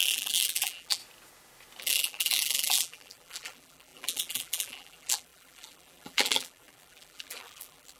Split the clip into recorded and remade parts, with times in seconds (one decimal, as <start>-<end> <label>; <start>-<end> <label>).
0.0-1.0 remade; 1.0-1.8 recorded; 1.8-8.0 remade